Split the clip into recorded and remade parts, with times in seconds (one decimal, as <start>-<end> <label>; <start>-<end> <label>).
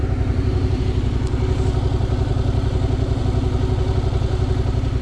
0.0-0.8 remade; 0.8-5.0 recorded